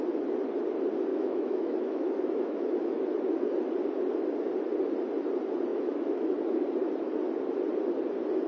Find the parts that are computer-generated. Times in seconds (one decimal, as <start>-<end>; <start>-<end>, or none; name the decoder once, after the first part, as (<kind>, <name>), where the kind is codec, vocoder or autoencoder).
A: 1.1-3.0 (autoencoder, DAC-VAE); 5.7-6.3